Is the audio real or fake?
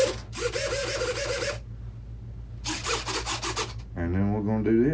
real